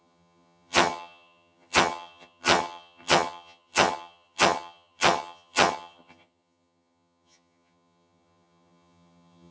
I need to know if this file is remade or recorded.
remade